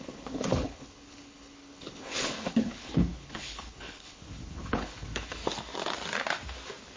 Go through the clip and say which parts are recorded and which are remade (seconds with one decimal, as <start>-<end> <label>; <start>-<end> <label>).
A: 0.0-5.4 remade; 5.4-7.0 recorded